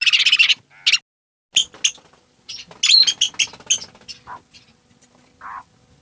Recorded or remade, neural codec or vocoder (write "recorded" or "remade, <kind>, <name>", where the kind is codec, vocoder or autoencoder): recorded